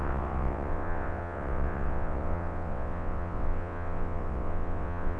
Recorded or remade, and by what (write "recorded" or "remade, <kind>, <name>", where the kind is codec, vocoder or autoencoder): remade, vocoder, WaveNeXt